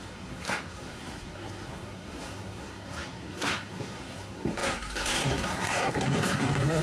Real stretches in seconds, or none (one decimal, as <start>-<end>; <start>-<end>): none